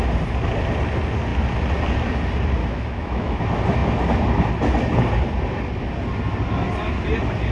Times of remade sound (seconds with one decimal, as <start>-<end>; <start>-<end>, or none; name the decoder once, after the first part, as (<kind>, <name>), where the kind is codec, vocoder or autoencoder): 2.6-3.4 (autoencoder, DAC-VAE)